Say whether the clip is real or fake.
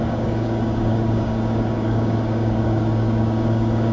fake